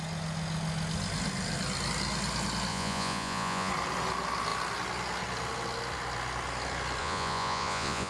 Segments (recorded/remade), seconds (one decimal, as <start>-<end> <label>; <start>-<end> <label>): 0.0-2.7 recorded; 2.7-3.7 remade; 3.7-7.0 recorded; 7.0-8.1 remade